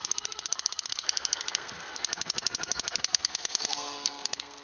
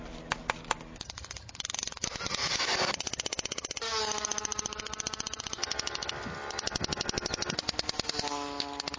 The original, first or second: second